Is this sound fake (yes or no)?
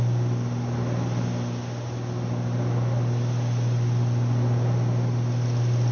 no